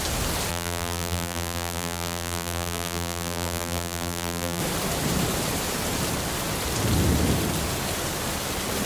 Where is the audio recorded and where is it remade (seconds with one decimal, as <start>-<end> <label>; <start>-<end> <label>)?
0.0-0.5 recorded; 0.5-4.6 remade; 4.6-8.9 recorded